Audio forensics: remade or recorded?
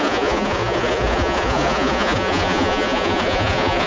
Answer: remade